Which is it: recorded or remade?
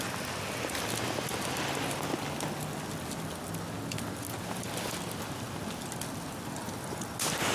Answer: recorded